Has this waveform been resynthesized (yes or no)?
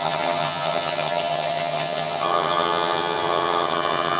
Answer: yes